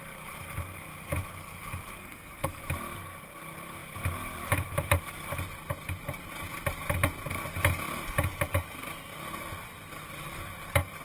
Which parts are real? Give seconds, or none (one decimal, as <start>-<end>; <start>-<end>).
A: 0.0-2.0; 2.6-11.0